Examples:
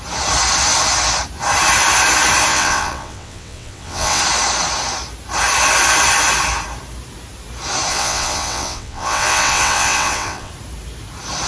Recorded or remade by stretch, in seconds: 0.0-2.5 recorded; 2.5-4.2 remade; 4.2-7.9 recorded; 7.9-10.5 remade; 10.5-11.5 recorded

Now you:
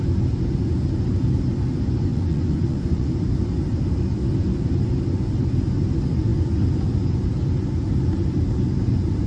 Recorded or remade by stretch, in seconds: 0.0-2.1 recorded; 2.1-3.1 remade; 3.1-9.3 recorded

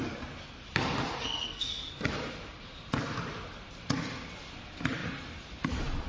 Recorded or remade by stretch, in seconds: 0.0-1.2 recorded; 1.2-1.9 remade; 1.9-6.1 recorded

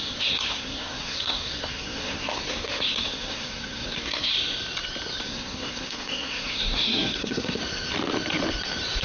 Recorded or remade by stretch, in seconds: 0.0-4.3 remade; 4.3-5.2 recorded; 5.2-7.6 remade; 7.6-9.0 recorded

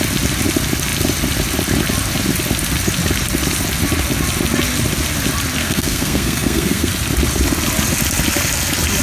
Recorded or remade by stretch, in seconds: 0.0-5.6 recorded; 5.6-6.9 remade; 6.9-9.0 recorded

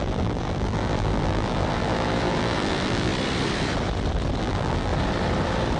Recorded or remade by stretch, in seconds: 0.0-3.1 remade; 3.1-4.4 recorded; 4.4-4.9 remade; 4.9-5.8 recorded

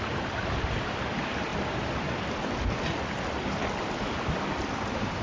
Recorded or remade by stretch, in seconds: 0.0-5.2 remade